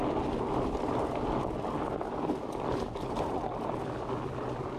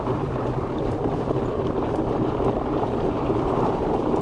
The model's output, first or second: second